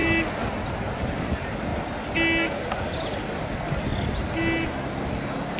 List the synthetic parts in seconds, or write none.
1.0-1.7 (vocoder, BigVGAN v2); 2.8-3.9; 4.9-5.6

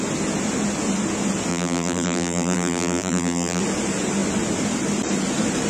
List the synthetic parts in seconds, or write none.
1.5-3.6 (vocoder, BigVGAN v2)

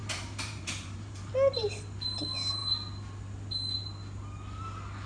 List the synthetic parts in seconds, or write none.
0.0-1.3 (vocoder, BigVGAN v2)